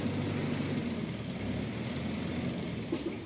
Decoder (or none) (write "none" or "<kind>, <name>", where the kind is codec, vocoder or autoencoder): none